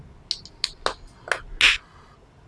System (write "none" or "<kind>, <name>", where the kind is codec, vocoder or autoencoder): none